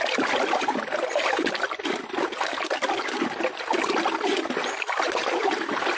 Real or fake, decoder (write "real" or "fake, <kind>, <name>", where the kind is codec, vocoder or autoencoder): real